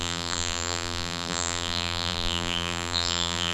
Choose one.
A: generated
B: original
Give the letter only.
A